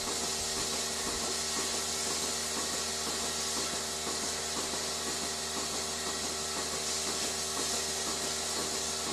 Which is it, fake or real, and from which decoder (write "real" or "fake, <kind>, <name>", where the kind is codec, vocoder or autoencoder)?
real